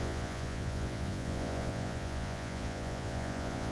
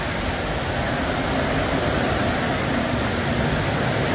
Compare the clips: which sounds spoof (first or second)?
first